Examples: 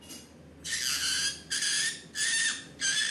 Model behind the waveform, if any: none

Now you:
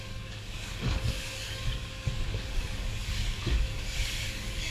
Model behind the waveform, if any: codec, DAC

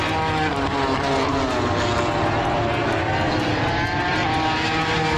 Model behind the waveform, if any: none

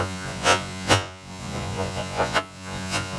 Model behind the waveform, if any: vocoder, Vocos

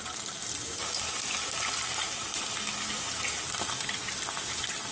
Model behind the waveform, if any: none